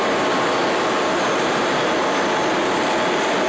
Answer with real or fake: real